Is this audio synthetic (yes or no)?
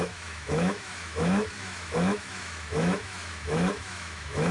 yes